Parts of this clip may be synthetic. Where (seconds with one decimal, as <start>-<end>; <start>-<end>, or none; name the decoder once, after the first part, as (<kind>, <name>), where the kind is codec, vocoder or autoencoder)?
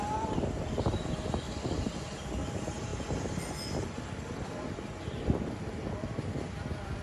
none